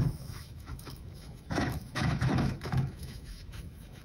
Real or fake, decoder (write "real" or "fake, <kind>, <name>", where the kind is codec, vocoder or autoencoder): fake, autoencoder, DAC-VAE